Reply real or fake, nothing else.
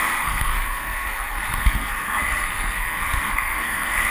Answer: fake